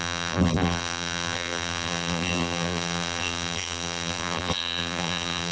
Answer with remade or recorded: remade